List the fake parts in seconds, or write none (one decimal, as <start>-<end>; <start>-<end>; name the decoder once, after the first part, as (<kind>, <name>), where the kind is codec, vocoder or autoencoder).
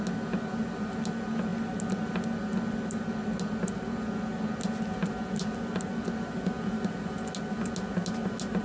none